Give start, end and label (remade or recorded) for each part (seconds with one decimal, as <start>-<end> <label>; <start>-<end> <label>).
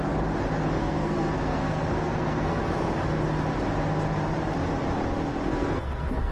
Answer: 0.0-0.8 recorded; 0.8-2.6 remade; 2.6-5.5 recorded; 5.5-6.3 remade